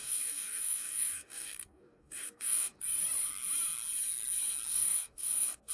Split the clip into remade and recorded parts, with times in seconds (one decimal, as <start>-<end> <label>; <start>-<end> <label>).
0.0-2.8 remade; 2.8-4.7 recorded; 4.7-5.7 remade